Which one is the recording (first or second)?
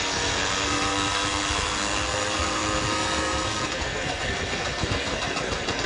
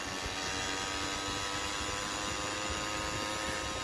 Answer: second